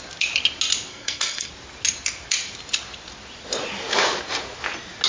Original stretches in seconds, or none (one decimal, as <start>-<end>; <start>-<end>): 0.0-0.9; 1.5-5.1